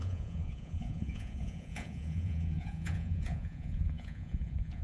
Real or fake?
fake